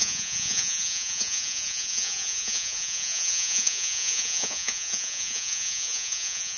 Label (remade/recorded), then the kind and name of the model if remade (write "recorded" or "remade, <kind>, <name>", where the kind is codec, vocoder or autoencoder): remade, vocoder, Vocos